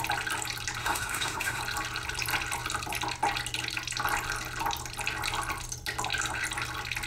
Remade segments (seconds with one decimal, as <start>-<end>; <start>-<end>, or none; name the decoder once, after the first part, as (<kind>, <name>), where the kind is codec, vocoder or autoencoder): 0.8-1.6 (autoencoder, DAC-VAE)

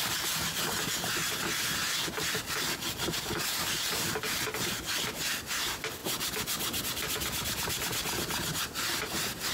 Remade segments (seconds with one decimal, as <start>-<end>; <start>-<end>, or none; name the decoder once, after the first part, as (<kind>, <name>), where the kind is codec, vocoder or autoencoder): none

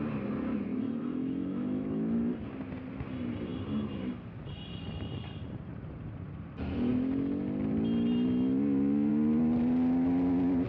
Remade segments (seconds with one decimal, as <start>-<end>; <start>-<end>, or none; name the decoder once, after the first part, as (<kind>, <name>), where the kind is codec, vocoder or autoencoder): 0.7-2.3 (autoencoder, DAC-VAE)

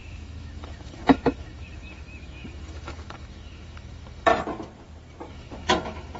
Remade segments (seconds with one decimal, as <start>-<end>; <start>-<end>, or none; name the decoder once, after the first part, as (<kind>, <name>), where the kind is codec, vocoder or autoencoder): 0.0-4.3 (autoencoder, DAC-VAE); 5.3-6.2